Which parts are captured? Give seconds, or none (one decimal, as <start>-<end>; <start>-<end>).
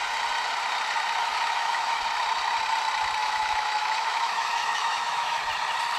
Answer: 0.0-1.2; 2.0-3.2; 5.4-6.0